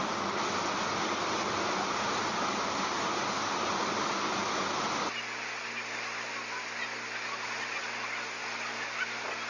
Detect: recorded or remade recorded